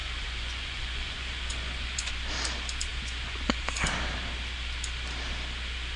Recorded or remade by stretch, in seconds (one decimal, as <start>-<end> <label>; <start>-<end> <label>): 0.0-2.1 remade; 2.1-2.9 recorded; 2.9-3.6 remade; 3.6-6.0 recorded